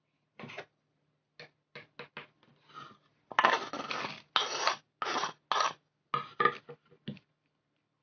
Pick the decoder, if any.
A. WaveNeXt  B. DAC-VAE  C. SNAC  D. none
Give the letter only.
D